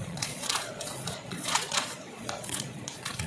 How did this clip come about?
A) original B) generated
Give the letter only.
B